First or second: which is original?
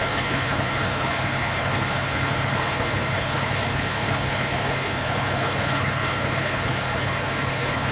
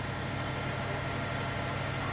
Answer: second